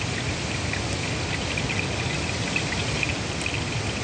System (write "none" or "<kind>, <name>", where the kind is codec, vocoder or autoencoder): none